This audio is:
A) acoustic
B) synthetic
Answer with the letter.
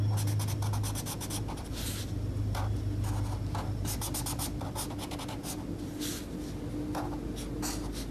A